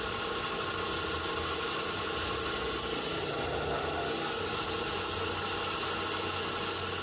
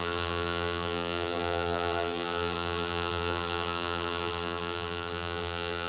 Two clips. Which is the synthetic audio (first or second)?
second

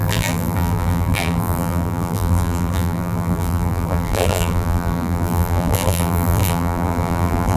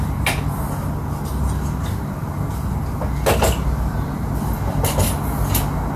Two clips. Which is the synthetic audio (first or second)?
first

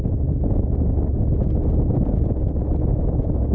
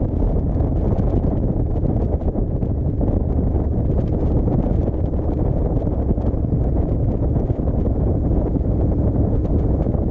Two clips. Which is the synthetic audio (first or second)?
second